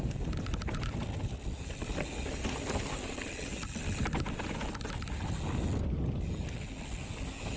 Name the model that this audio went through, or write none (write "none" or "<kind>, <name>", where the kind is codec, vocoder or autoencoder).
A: none